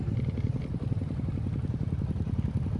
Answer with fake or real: real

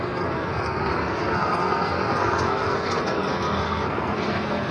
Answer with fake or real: fake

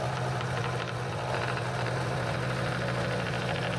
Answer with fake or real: real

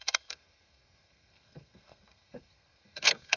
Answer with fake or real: fake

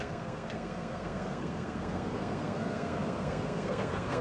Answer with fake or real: fake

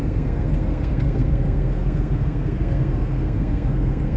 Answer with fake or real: fake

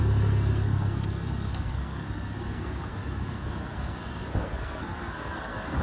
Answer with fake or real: fake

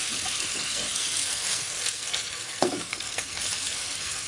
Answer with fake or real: fake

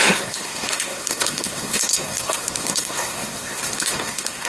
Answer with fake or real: fake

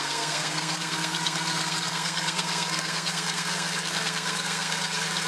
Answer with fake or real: fake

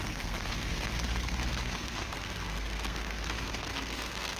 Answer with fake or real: fake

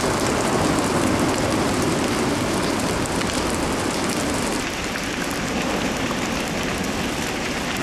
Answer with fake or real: real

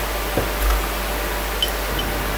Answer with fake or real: real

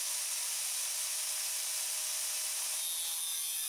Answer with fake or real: real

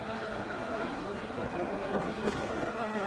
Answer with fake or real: fake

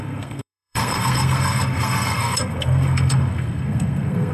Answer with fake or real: fake